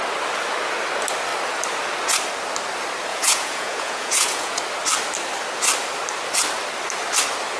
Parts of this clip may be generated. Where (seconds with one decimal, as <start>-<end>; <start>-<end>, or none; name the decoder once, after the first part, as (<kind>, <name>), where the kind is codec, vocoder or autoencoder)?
3.1-4.6 (vocoder, Vocos)